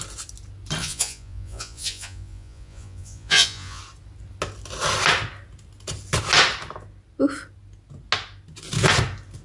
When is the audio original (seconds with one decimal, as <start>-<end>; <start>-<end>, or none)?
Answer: 0.0-0.8; 3.8-9.4